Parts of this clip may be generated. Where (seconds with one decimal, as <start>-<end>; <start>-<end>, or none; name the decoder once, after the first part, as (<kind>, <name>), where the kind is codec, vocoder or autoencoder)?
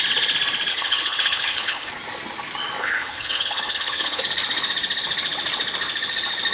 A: 0.7-1.9 (codec, HILCodec); 2.8-4.2